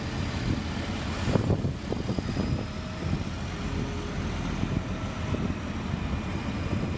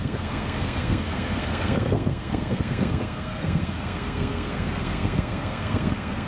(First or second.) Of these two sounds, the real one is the first